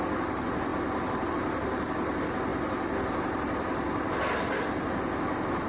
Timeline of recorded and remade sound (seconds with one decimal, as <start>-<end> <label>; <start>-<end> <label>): 0.0-0.7 remade; 0.7-1.3 recorded; 1.3-5.7 remade